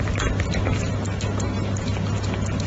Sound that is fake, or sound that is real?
real